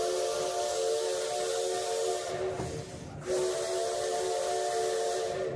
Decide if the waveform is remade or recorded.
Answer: recorded